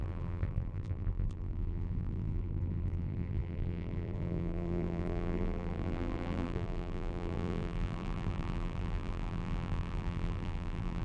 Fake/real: fake